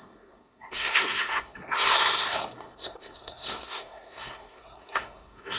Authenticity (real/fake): fake